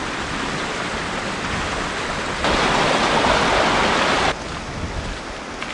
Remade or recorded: recorded